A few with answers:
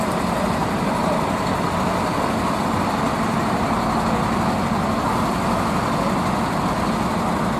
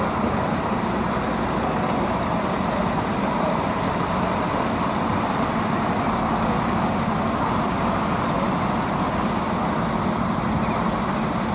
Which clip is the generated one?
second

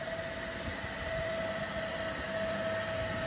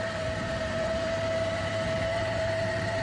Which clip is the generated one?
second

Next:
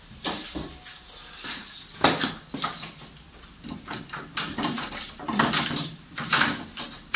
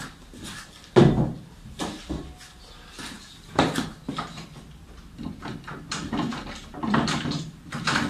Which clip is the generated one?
first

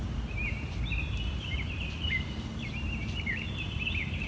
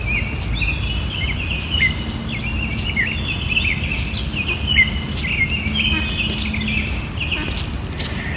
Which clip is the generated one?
first